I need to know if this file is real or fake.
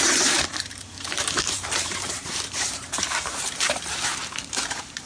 fake